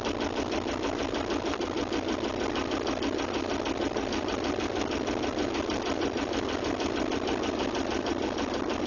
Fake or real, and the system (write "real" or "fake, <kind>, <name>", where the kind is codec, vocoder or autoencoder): real